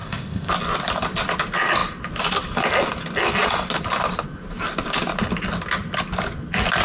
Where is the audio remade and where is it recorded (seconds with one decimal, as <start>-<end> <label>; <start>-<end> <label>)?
0.0-0.5 remade; 0.5-6.8 recorded